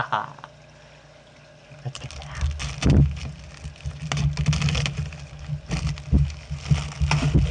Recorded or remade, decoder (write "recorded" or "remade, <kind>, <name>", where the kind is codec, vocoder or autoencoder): recorded